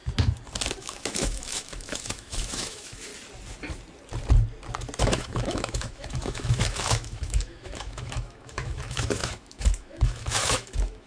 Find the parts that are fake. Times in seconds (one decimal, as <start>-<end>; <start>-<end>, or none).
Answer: 0.8-3.1; 5.0-11.1